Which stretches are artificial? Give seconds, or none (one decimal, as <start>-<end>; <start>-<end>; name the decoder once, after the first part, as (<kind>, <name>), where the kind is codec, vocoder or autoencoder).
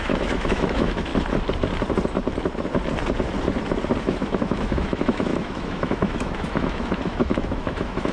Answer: 0.0-1.1 (autoencoder, DAC-VAE); 4.0-8.1